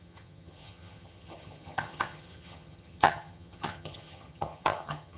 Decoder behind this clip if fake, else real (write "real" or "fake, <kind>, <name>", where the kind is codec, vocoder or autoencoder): fake, vocoder, HiFi-GAN